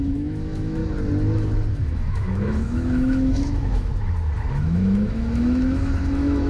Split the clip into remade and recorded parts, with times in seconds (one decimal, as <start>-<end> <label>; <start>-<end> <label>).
0.0-0.8 remade; 0.8-1.7 recorded; 1.7-3.9 remade; 3.9-4.5 recorded; 4.5-6.5 remade